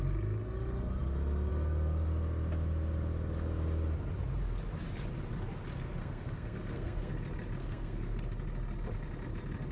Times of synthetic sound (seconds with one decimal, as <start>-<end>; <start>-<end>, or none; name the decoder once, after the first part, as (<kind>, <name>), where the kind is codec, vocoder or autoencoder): 6.0-7.1 (codec, SNAC); 7.6-8.2